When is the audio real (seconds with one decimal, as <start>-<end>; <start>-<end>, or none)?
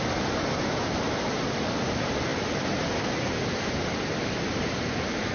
0.0-5.3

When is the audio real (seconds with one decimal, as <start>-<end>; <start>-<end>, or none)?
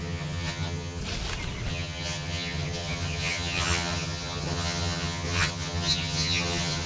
1.0-1.7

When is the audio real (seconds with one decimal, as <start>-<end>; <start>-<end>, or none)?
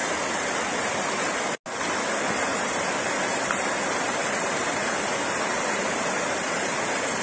0.0-7.2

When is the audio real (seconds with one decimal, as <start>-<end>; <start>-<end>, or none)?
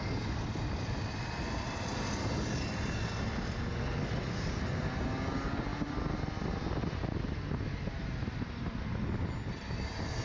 0.0-10.2